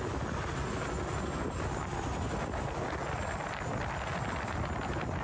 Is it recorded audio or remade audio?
recorded